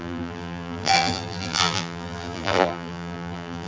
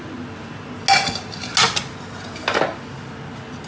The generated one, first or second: first